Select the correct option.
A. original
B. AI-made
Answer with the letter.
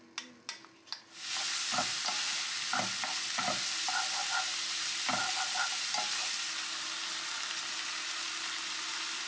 A